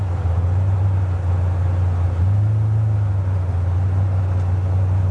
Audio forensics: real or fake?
real